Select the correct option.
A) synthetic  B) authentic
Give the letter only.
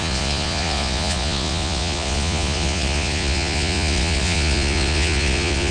A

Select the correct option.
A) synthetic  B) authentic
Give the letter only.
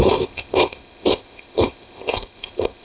A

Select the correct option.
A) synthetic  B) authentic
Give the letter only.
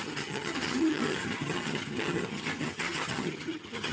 A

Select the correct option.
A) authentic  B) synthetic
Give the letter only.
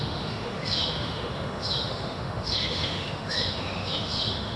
B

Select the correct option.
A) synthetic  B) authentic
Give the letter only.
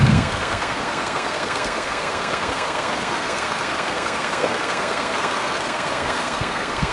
A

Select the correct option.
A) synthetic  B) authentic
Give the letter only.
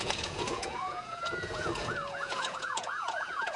A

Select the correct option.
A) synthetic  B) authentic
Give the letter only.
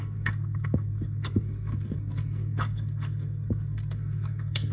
A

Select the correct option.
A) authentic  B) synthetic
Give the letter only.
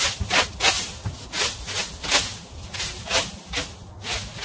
A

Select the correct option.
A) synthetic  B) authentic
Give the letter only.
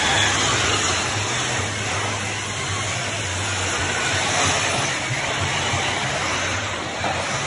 B